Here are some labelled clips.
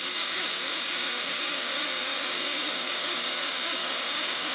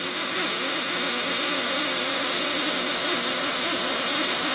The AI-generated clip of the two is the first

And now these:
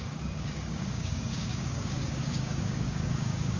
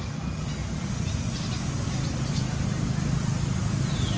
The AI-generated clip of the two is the first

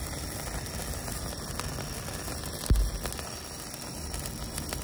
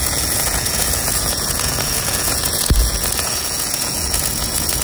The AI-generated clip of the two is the second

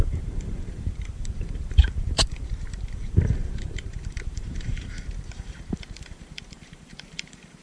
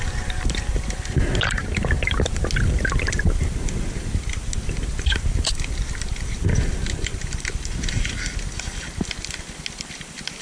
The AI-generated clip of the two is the first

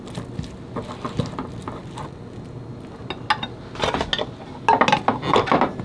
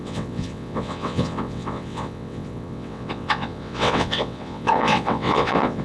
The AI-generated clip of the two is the second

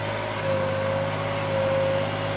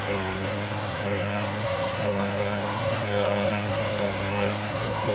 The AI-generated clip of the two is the second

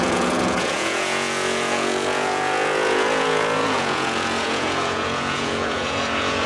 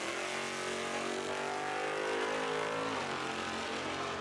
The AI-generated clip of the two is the first